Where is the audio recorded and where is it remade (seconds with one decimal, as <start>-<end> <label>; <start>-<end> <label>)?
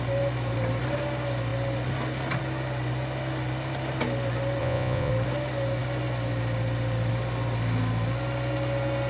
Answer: 0.0-4.6 recorded; 4.6-5.1 remade; 5.1-9.1 recorded